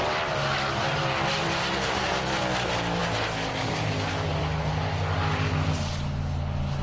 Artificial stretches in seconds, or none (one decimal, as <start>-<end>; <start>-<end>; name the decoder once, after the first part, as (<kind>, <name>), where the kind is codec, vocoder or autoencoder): none